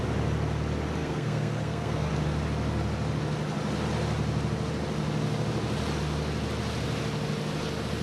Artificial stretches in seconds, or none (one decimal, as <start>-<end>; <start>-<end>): 1.0-2.1